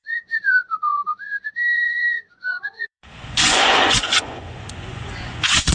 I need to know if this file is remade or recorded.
remade